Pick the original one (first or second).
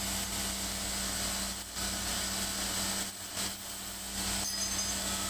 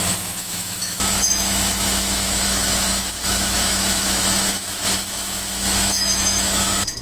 first